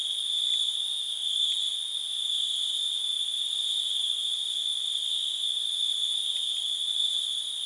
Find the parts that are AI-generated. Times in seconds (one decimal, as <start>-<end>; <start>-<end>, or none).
0.6-7.7